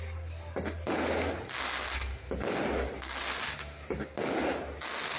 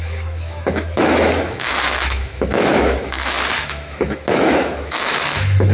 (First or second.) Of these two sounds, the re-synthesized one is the second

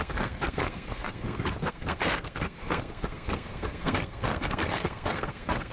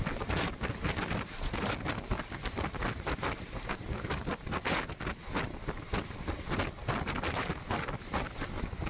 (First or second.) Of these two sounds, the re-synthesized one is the first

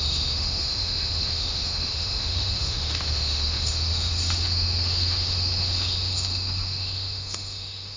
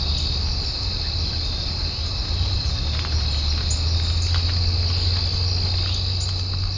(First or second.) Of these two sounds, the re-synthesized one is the first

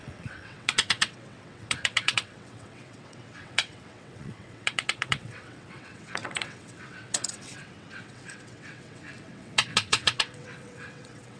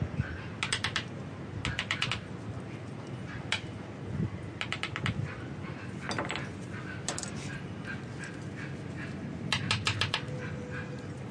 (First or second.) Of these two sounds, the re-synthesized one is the first